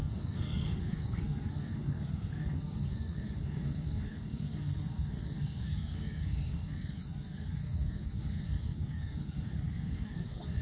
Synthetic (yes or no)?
yes